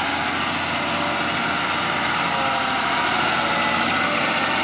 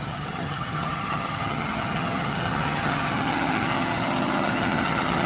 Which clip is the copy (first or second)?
second